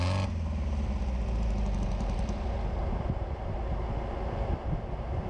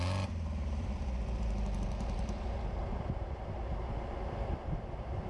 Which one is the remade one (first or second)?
second